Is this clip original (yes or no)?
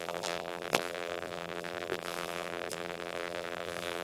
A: no